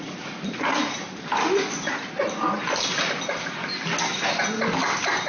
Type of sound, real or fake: real